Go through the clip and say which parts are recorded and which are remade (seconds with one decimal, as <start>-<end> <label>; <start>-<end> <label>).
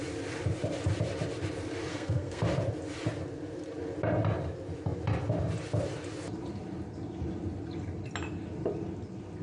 0.0-1.9 recorded; 1.9-2.4 remade; 2.4-9.4 recorded